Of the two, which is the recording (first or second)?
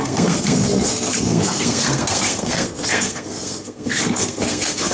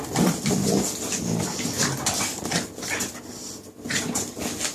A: second